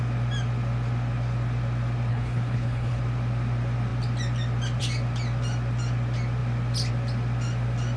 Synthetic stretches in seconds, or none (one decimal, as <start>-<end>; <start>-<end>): 2.1-3.0